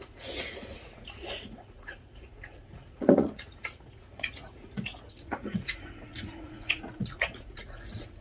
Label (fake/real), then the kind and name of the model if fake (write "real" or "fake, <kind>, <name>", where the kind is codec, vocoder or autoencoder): fake, vocoder, Vocos